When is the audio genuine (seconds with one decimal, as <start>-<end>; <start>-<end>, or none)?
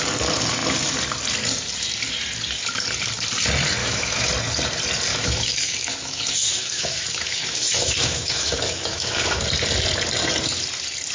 0.0-3.8; 4.3-5.1; 9.4-11.1